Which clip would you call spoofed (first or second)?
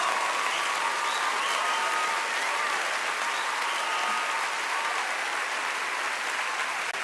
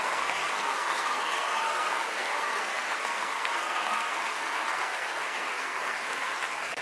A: second